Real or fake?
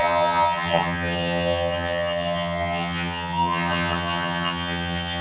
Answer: fake